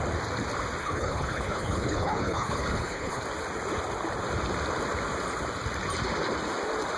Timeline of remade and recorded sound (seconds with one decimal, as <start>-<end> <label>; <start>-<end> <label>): 0.0-0.8 recorded; 0.8-3.2 remade; 3.2-7.0 recorded